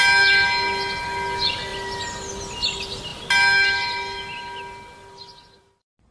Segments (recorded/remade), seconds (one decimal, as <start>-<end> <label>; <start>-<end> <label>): 0.0-6.1 recorded